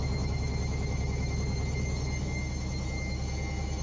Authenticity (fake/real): fake